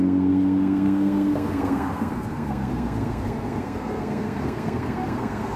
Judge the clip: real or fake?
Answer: fake